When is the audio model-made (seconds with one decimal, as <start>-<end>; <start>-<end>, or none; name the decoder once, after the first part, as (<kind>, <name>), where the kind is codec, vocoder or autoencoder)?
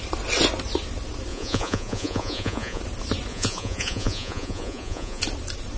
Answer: 1.3-2.8 (vocoder, Vocos); 3.3-5.2